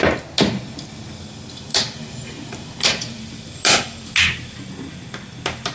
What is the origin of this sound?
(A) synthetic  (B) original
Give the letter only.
B